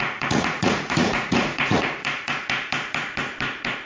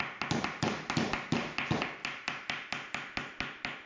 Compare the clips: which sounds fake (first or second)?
first